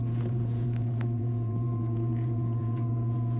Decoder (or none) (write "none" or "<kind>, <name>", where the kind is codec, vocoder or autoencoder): vocoder, Vocos